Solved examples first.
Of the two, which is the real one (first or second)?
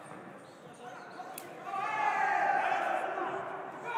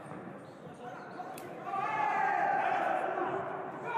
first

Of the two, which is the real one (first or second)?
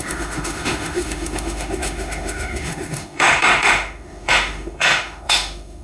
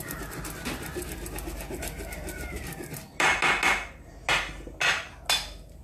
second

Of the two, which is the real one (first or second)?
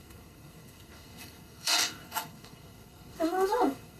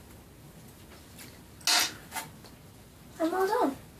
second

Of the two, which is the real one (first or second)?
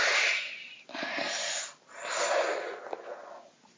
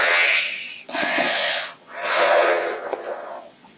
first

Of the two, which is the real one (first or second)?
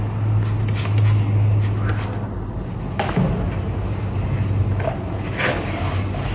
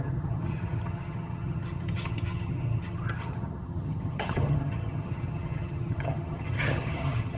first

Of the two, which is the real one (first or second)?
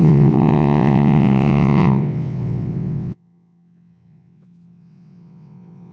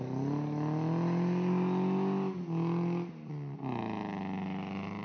second